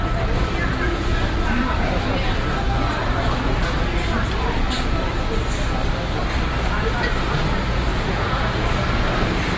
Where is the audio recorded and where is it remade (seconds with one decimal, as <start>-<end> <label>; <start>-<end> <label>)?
0.0-0.7 recorded; 0.7-1.2 remade; 1.2-7.9 recorded; 7.9-8.7 remade; 8.7-9.6 recorded

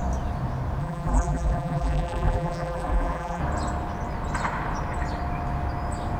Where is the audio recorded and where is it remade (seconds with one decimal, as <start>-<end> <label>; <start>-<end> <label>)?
0.0-0.8 recorded; 0.8-3.4 remade; 3.4-6.2 recorded

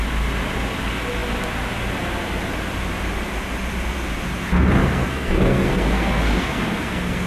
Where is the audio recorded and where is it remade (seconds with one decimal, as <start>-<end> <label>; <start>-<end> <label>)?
0.0-4.8 recorded; 4.8-7.3 remade

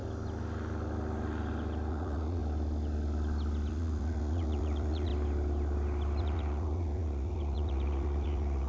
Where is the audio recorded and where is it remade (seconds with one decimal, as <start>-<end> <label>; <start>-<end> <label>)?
0.0-1.9 recorded; 1.9-2.4 remade; 2.4-3.7 recorded; 3.7-5.1 remade; 5.1-6.2 recorded; 6.2-8.7 remade

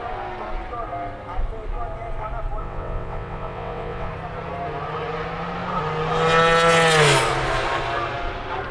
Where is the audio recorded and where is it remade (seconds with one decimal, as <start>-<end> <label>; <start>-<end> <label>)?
0.0-2.6 recorded; 2.6-4.1 remade; 4.1-8.7 recorded

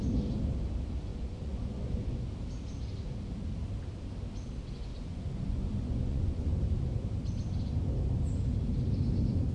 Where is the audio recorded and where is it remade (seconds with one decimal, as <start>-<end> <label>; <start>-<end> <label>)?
0.0-1.1 recorded; 1.1-2.3 remade; 2.3-4.9 recorded; 4.9-6.5 remade; 6.5-9.5 recorded

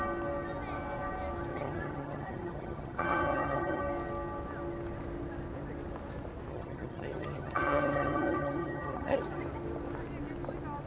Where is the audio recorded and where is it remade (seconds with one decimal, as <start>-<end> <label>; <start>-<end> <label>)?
0.0-1.5 recorded; 1.5-3.8 remade; 3.8-6.5 recorded; 6.5-9.4 remade; 9.4-10.9 recorded

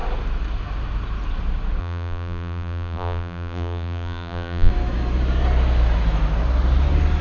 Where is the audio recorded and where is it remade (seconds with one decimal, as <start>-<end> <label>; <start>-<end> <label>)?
0.0-1.8 recorded; 1.8-4.7 remade; 4.7-7.2 recorded